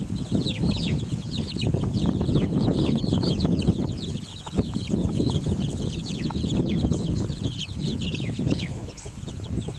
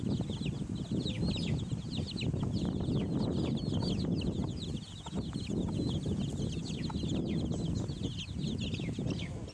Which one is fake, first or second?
first